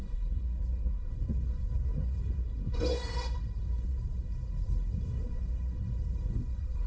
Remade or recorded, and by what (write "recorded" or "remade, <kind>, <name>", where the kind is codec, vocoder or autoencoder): remade, codec, SNAC